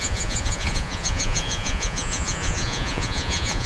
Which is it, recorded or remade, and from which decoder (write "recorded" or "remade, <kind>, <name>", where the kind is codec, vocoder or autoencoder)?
remade, vocoder, Vocos